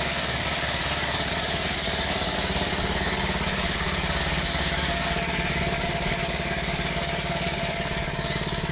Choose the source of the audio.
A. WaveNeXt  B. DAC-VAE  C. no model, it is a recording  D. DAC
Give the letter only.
D